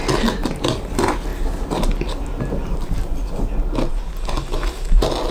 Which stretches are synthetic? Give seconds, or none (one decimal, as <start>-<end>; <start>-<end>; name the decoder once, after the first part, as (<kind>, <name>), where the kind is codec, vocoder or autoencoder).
none